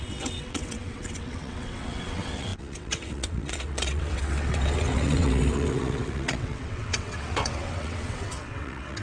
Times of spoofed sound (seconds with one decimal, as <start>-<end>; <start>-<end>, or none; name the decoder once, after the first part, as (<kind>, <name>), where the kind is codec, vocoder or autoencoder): 0.0-9.0 (vocoder, WaveNeXt)